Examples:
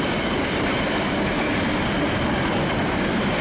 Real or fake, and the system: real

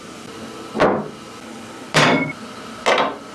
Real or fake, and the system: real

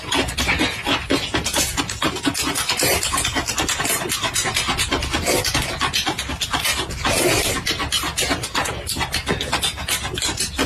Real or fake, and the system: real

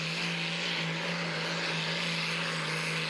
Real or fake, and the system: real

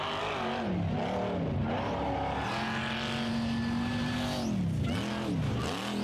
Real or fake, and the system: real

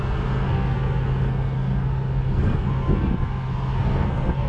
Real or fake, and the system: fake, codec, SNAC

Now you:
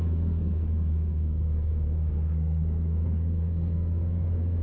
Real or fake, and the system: fake, codec, SNAC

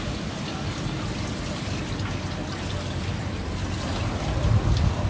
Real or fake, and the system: real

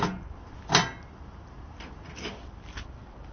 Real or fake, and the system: real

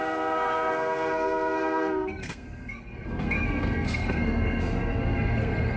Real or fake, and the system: fake, codec, SNAC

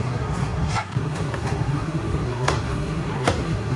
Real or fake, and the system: fake, codec, SNAC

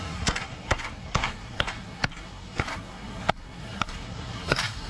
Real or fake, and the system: fake, codec, SNAC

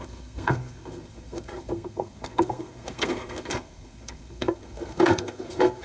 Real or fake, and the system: fake, codec, SNAC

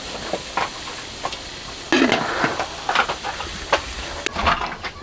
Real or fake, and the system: real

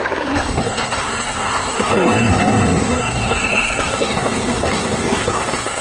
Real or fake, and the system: fake, codec, SNAC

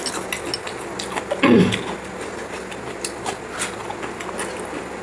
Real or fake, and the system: real